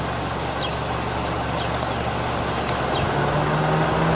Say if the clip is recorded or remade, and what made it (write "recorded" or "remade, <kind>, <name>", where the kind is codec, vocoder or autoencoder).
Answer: recorded